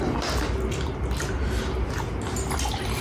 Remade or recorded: recorded